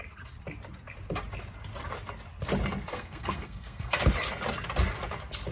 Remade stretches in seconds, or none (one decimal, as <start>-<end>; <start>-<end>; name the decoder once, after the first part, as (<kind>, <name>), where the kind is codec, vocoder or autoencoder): 2.9-4.0 (codec, SNAC)